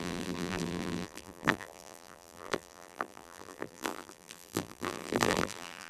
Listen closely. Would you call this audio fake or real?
fake